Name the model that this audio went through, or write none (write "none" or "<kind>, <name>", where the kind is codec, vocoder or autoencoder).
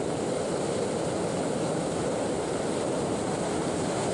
vocoder, BigVGAN v2